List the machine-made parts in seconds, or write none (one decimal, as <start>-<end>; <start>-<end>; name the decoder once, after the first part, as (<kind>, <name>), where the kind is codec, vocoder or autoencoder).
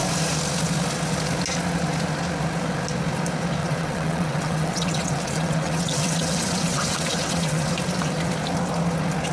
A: 3.6-7.7 (vocoder, WaveNeXt)